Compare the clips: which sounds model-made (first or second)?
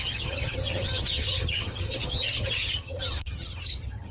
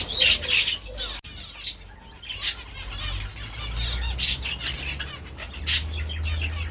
first